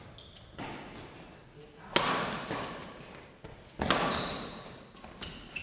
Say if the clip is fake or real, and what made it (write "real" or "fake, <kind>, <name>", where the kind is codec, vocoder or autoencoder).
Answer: real